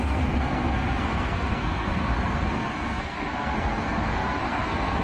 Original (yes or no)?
no